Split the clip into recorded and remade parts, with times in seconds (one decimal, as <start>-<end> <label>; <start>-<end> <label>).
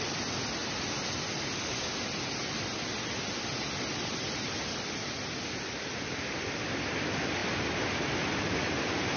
0.0-9.2 recorded